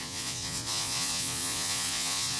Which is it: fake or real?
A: fake